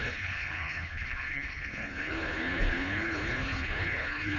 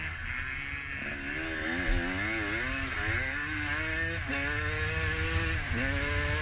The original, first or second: second